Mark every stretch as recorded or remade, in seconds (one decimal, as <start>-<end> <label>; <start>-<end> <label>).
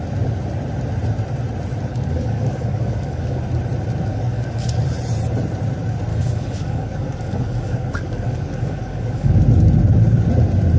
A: 0.0-1.9 recorded; 1.9-3.4 remade; 3.4-4.1 recorded; 4.1-4.7 remade; 4.7-6.1 recorded; 6.1-9.4 remade; 9.4-10.8 recorded